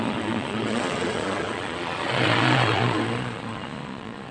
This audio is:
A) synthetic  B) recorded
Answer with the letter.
A